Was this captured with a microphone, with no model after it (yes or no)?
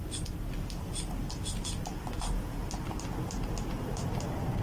yes